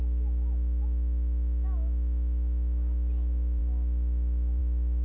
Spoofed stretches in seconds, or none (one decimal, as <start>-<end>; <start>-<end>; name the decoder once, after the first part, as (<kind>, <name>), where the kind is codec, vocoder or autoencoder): none